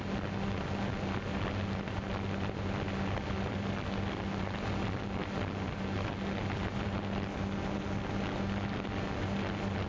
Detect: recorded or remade recorded